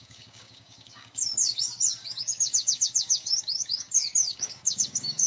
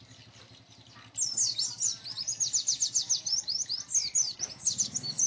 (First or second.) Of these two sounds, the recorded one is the second